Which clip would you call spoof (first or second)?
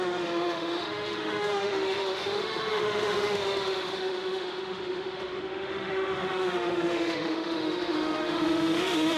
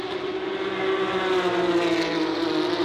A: first